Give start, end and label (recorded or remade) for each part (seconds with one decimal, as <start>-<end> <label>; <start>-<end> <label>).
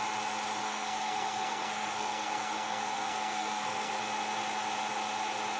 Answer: 0.0-0.6 recorded; 0.6-4.0 remade; 4.0-5.6 recorded